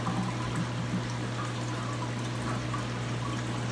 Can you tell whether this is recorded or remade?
recorded